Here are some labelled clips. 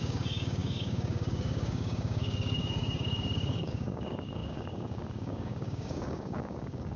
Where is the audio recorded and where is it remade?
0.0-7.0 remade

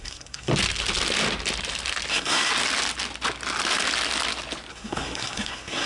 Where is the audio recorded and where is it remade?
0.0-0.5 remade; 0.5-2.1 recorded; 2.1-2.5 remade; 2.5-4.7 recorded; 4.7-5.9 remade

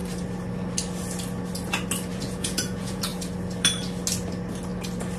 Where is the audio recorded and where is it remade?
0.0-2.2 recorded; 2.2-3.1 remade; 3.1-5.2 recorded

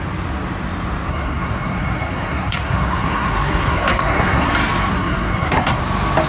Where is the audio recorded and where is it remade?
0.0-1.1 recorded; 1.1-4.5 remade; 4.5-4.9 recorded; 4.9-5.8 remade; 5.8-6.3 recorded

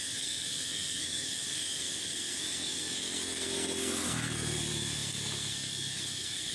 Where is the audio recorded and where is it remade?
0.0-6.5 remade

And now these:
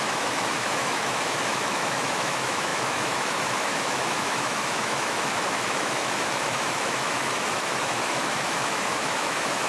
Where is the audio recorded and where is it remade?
0.0-9.7 remade